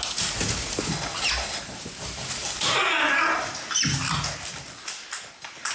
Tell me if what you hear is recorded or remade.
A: recorded